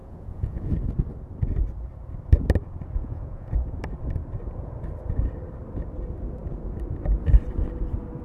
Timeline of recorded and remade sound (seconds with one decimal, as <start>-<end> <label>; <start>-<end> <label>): 0.0-0.7 remade; 0.7-3.0 recorded; 3.0-3.6 remade; 3.6-8.2 recorded